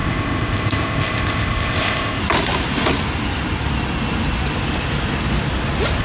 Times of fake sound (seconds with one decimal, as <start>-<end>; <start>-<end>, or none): 0.0-2.2